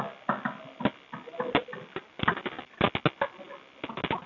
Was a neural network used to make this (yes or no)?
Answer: no